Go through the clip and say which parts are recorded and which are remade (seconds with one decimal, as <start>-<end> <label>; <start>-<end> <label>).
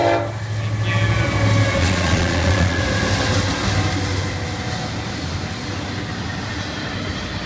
0.0-1.8 recorded; 1.8-2.8 remade; 2.8-7.5 recorded